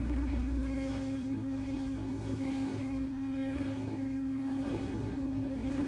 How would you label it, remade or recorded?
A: remade